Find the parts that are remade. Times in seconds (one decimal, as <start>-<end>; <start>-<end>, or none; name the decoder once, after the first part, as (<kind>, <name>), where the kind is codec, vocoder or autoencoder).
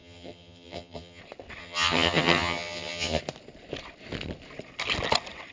0.0-1.2 (vocoder, HiFi-GAN); 1.6-3.2